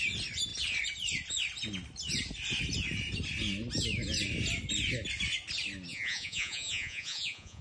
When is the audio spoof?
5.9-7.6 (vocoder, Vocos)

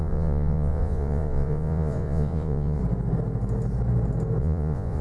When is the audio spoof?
0.0-2.8 (vocoder, Vocos); 4.4-5.0

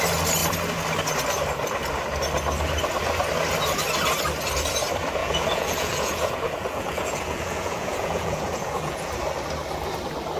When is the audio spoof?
5.2-9.1 (vocoder, Vocos)

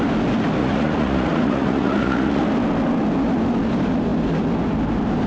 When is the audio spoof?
0.6-2.4 (vocoder, Vocos)

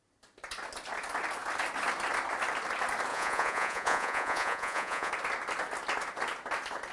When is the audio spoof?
3.1-5.1 (vocoder, Vocos)

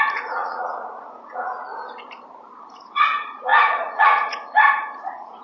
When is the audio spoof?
0.0-1.6 (vocoder, Vocos); 2.7-5.4

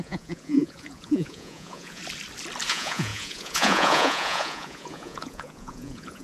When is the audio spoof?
0.0-2.0 (vocoder, Vocos); 2.7-6.2

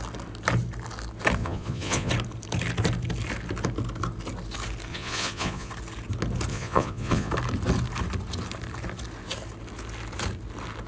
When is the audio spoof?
1.4-2.1 (vocoder, Vocos); 4.9-5.7; 6.5-7.3